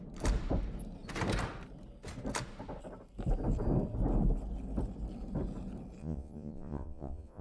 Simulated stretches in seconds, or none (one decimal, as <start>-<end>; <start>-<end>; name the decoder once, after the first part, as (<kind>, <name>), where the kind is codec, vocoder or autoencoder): 6.0-7.4 (vocoder, Vocos)